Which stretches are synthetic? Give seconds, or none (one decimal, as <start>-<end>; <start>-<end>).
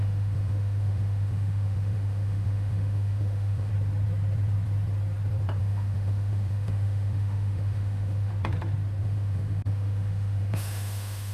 0.0-3.7; 5.6-8.3; 9.0-11.3